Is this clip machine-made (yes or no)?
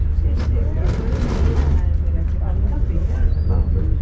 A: no